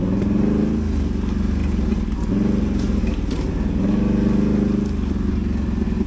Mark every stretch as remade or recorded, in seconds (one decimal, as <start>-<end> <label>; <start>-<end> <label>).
0.0-6.1 recorded